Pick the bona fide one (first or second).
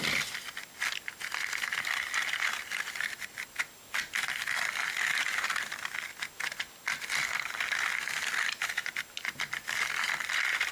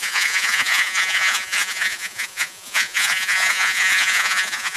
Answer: first